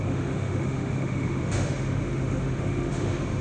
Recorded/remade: remade